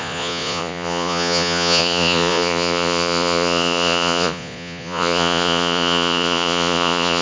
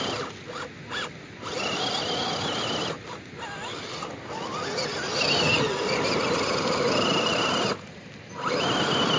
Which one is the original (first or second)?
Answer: second